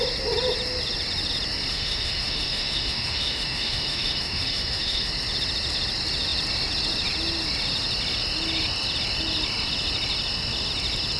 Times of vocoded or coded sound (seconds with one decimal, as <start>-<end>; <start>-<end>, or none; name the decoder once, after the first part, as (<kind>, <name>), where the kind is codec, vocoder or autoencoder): 1.7-5.1 (autoencoder, DAC-VAE)